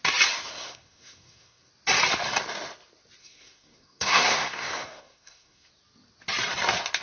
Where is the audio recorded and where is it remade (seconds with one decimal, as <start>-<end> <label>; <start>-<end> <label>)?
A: 0.0-0.5 recorded; 0.5-1.7 remade; 1.7-3.2 recorded; 3.2-5.7 remade; 5.7-7.0 recorded